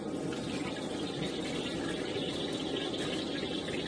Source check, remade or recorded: recorded